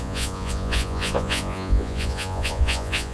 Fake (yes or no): yes